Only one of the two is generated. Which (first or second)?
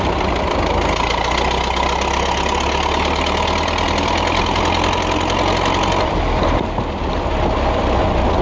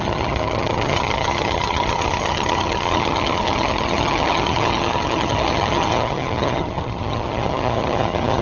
second